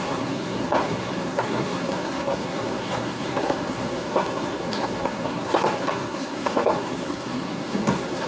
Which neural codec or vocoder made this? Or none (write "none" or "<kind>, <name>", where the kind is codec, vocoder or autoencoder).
codec, SNAC